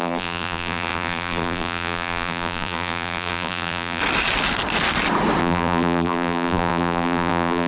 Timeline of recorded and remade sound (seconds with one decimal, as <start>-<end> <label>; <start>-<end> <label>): 0.0-4.0 remade; 4.0-5.4 recorded; 5.4-7.7 remade

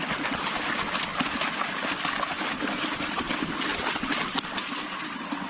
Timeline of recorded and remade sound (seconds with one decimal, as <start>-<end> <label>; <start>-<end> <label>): 0.0-3.7 recorded; 3.7-4.4 remade; 4.4-5.5 recorded

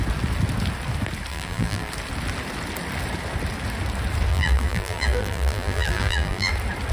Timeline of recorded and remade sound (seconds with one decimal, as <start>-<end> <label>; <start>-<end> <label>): 0.0-1.3 recorded; 1.3-1.9 remade; 1.9-4.3 recorded; 4.3-6.5 remade; 6.5-6.9 recorded

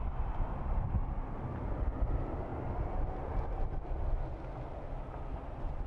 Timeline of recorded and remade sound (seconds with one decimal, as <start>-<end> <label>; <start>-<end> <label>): 0.0-5.9 recorded